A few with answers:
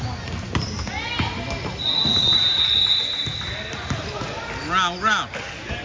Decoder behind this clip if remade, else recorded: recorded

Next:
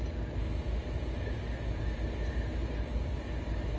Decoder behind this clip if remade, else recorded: recorded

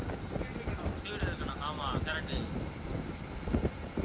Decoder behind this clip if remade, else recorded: recorded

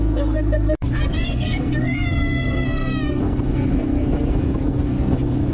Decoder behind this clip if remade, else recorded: remade, codec, SNAC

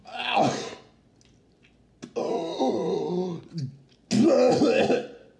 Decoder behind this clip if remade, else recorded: recorded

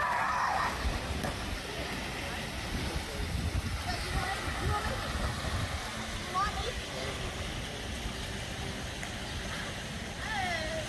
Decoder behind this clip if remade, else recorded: recorded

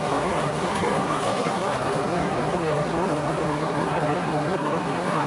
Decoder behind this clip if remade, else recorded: remade, codec, SNAC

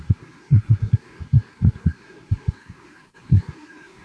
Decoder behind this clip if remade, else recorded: remade, codec, SNAC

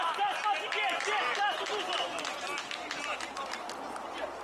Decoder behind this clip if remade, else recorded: recorded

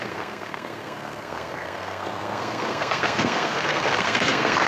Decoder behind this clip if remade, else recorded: remade, codec, SNAC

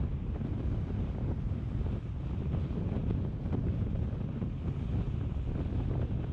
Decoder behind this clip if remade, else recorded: recorded